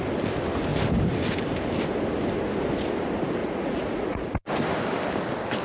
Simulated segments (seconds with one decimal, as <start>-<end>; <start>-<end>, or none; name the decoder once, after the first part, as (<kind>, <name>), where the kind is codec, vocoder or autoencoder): 3.4-4.5 (vocoder, Vocos)